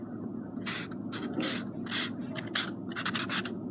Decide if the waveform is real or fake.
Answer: real